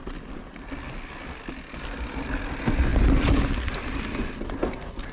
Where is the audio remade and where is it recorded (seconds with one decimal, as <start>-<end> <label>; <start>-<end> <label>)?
0.0-5.1 recorded